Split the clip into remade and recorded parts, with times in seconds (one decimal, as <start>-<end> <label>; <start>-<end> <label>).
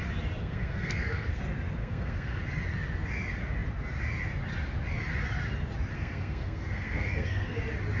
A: 0.0-0.4 recorded; 0.4-1.4 remade; 1.4-1.8 recorded; 1.8-2.4 remade; 2.4-5.9 recorded; 5.9-7.6 remade; 7.6-8.0 recorded